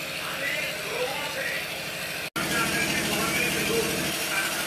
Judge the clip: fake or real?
real